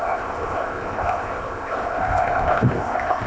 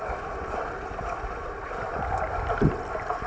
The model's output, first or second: first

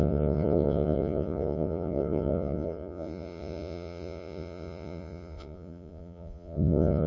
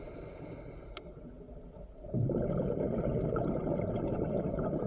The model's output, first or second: first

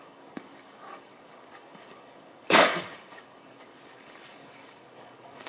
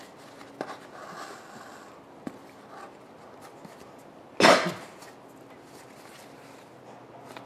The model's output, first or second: first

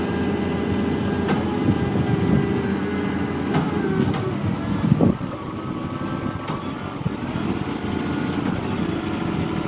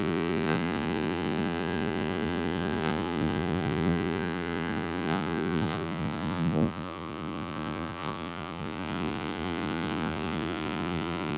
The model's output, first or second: second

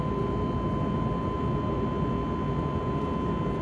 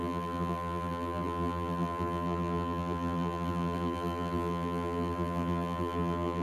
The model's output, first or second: second